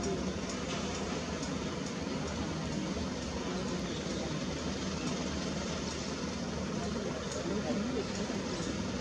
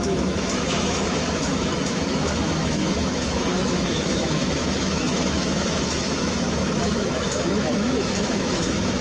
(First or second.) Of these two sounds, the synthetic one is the second